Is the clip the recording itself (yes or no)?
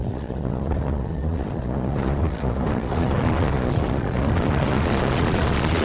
no